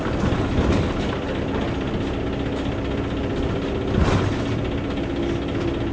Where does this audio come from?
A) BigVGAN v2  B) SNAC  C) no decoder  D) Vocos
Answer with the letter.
C